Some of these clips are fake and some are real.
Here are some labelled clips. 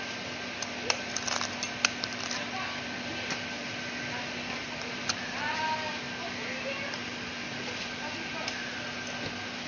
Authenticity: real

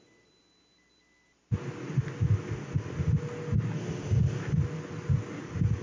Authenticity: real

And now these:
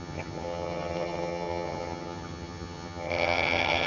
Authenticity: fake